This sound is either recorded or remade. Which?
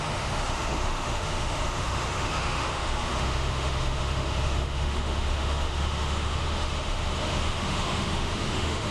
remade